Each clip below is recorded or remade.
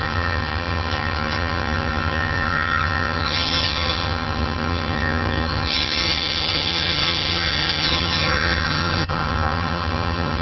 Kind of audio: remade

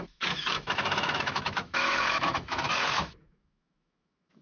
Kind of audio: remade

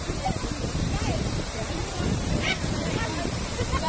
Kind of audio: remade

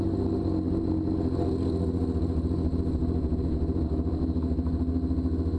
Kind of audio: recorded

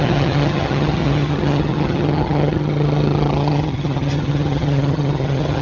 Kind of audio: remade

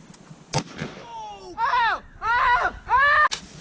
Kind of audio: recorded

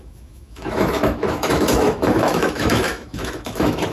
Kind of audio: remade